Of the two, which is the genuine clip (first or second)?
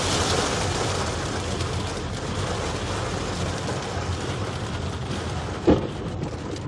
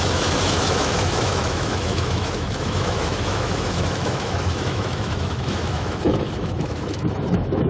first